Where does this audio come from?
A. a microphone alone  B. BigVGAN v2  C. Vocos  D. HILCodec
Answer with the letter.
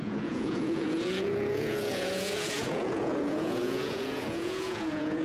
C